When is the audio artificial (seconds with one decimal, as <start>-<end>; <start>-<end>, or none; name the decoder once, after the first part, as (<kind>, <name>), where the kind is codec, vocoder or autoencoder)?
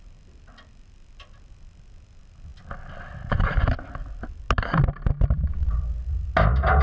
none